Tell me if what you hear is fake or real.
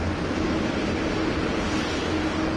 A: real